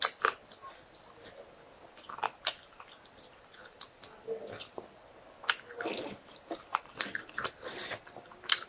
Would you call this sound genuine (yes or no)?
yes